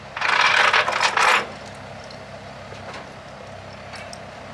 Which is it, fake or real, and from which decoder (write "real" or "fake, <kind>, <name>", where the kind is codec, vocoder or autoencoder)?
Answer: real